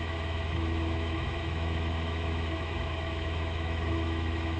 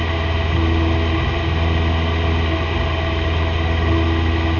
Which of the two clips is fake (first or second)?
first